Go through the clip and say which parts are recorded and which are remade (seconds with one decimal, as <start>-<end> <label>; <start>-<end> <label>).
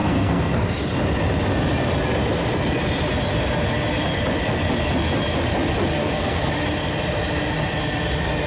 0.0-0.8 remade; 0.8-6.0 recorded; 6.0-6.5 remade; 6.5-8.5 recorded